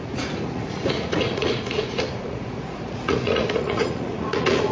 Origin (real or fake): fake